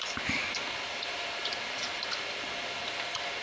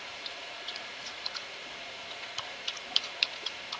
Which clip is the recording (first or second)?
first